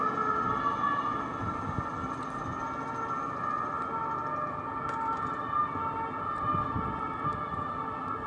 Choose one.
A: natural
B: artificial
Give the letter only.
A